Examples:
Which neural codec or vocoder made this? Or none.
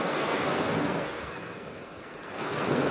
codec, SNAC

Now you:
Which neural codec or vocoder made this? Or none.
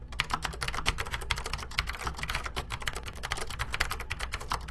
none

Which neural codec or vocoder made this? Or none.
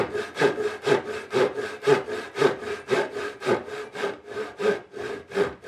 none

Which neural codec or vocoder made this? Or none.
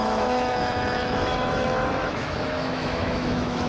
autoencoder, DAC-VAE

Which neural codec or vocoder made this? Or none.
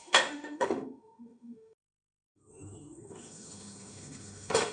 autoencoder, DAC-VAE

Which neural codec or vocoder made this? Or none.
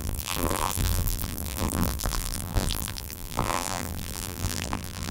vocoder, BigVGAN v2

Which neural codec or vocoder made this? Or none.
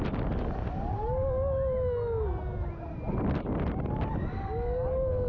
none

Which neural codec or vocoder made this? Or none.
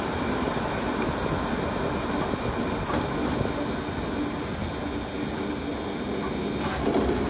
none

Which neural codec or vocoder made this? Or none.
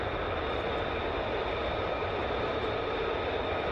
none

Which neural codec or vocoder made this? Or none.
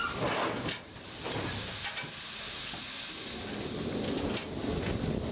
none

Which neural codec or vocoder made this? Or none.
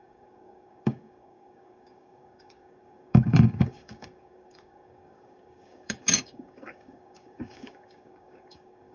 codec, DAC